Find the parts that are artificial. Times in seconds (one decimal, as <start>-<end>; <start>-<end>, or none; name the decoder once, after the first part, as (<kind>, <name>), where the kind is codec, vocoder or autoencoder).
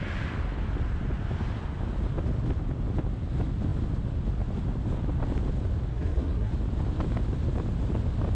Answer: 5.9-6.5 (codec, SNAC)